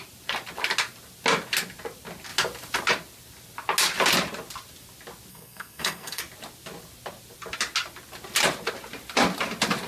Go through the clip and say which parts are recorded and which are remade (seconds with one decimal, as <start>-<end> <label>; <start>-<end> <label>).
0.0-5.3 recorded; 5.3-6.2 remade; 6.2-9.9 recorded